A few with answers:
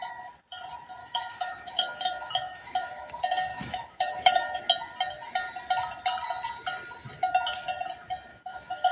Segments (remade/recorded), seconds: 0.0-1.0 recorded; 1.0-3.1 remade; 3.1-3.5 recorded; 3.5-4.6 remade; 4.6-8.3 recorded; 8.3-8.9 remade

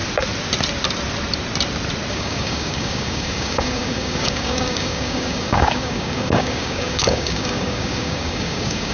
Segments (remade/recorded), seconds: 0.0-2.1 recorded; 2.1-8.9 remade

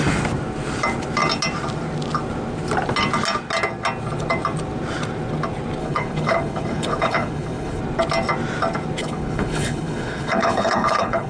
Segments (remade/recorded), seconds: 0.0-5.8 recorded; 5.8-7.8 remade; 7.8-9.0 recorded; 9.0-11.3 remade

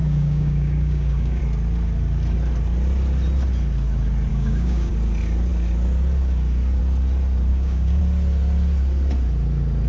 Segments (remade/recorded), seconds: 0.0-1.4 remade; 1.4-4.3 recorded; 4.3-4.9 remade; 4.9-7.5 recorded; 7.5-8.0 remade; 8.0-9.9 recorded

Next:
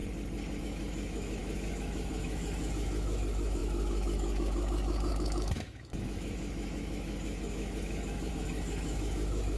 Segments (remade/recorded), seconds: 0.0-0.6 recorded; 0.6-9.6 remade

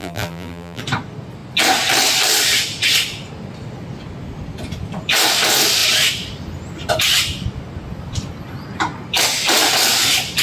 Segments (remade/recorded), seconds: 0.0-0.8 remade; 0.8-10.4 recorded

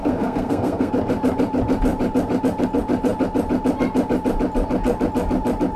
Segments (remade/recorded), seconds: 0.0-0.9 remade; 0.9-5.8 recorded

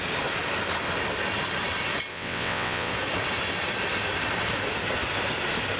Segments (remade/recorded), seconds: 0.0-2.1 recorded; 2.1-2.9 remade; 2.9-5.8 recorded